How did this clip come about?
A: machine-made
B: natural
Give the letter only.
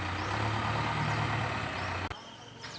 B